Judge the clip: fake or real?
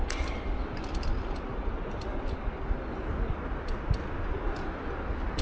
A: real